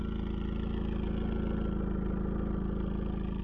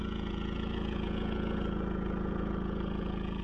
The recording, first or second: first